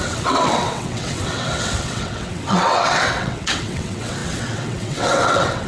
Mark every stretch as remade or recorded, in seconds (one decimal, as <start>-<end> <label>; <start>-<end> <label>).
0.0-5.7 remade